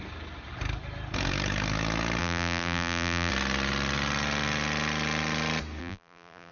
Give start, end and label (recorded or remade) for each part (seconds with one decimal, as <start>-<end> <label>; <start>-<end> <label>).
0.0-2.2 recorded; 2.2-3.3 remade; 3.3-5.8 recorded; 5.8-6.5 remade